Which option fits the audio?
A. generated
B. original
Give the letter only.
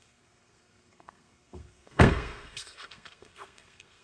A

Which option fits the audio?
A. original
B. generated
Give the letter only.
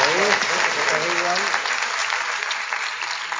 A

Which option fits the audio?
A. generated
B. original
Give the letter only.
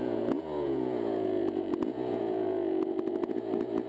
A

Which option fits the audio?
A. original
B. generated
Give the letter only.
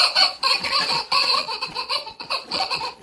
B